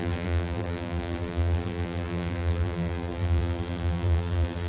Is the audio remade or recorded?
remade